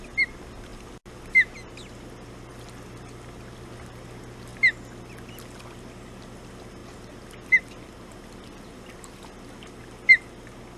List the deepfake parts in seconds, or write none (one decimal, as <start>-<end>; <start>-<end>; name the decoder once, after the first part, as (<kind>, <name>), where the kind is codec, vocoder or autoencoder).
none